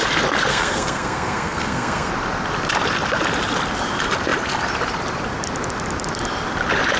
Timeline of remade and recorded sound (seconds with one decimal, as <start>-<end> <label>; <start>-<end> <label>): 0.0-0.5 recorded; 0.5-2.1 remade; 2.1-7.0 recorded